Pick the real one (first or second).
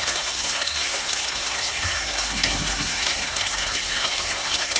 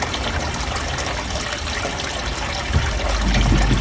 second